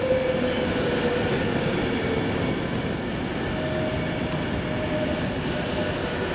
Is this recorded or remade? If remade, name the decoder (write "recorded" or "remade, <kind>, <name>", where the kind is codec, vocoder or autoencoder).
recorded